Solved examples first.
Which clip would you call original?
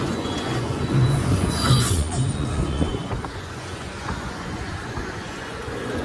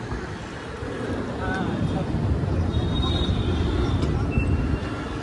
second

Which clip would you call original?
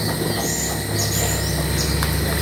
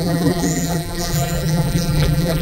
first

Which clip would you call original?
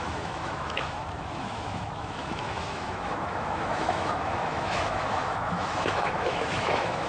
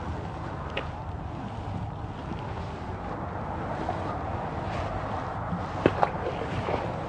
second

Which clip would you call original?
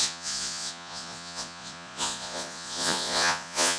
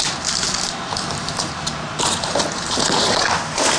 second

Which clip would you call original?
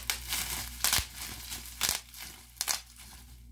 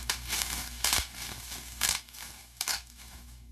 first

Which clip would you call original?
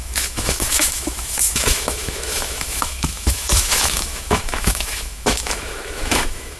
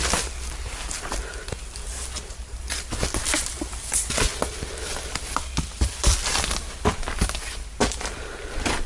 second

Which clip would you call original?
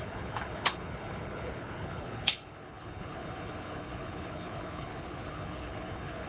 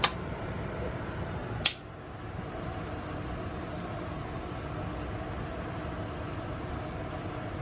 second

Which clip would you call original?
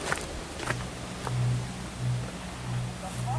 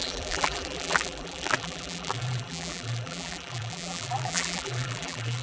first